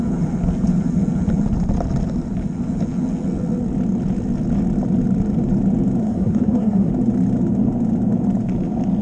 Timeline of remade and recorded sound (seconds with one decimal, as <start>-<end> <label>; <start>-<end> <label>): 0.0-6.0 recorded; 6.0-6.9 remade; 6.9-9.0 recorded